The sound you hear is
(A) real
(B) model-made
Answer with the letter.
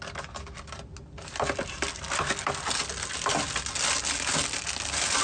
A